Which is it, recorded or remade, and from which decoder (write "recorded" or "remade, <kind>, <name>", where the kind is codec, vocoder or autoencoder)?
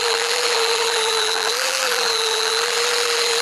remade, vocoder, BigVGAN v2